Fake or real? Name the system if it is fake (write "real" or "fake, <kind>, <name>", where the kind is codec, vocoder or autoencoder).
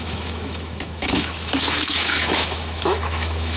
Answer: fake, autoencoder, DAC-VAE